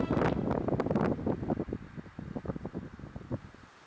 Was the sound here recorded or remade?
recorded